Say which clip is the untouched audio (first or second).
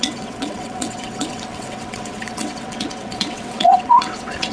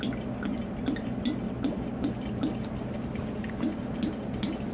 second